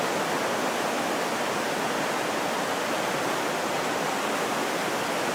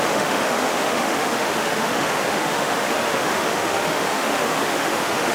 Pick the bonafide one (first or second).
first